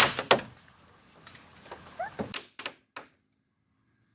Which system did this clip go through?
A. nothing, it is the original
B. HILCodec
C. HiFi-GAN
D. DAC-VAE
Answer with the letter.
A